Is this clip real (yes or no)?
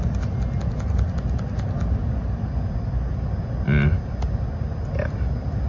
yes